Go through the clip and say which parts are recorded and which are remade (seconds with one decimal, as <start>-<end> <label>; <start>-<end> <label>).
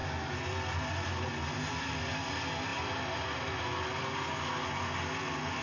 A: 0.0-5.6 recorded